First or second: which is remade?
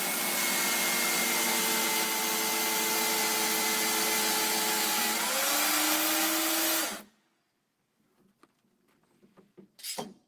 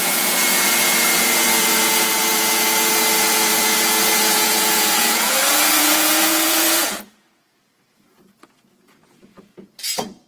second